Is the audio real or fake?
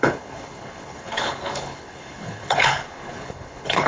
fake